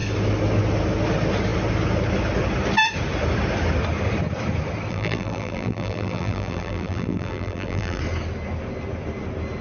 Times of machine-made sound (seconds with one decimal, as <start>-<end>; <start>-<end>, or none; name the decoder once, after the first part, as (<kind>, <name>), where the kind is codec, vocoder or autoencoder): 4.9-8.0 (vocoder, BigVGAN v2)